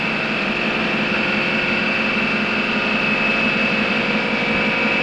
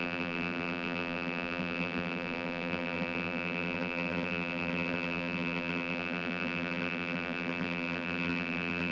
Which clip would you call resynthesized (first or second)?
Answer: second